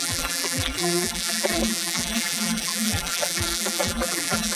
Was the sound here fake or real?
fake